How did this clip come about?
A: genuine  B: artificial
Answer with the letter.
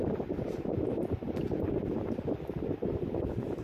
A